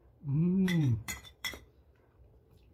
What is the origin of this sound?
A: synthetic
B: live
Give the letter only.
A